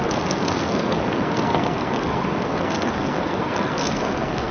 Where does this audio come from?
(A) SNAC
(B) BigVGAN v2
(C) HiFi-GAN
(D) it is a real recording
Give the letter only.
A